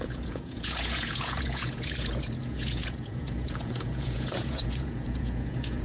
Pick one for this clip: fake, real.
fake